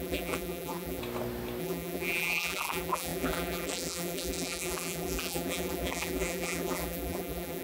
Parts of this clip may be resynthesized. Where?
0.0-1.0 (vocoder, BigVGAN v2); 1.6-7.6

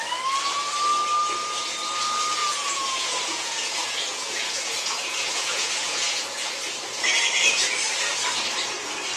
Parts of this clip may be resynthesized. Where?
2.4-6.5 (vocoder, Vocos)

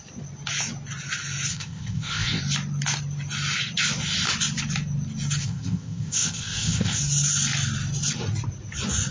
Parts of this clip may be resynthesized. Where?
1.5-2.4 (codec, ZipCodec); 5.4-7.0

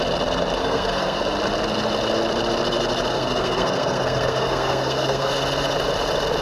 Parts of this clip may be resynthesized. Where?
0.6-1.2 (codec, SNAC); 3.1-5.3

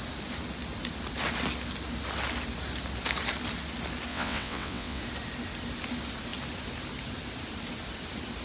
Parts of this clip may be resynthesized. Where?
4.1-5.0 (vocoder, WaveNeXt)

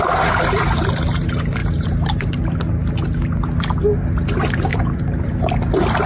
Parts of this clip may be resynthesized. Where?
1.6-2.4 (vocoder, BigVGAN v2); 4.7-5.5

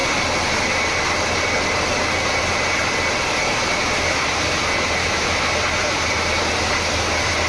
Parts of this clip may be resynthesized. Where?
5.0-5.5 (autoencoder, DAC-VAE)